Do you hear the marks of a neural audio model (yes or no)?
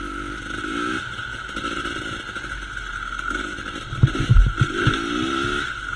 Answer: no